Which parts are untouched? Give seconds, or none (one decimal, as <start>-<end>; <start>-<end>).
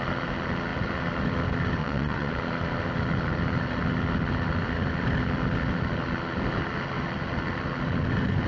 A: 0.0-1.8; 2.3-8.5